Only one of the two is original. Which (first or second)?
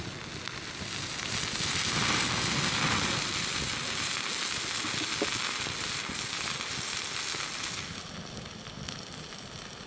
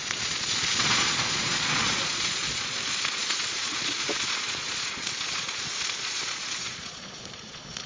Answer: first